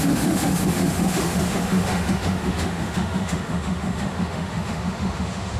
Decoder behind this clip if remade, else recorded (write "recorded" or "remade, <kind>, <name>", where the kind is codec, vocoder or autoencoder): remade, autoencoder, DAC-VAE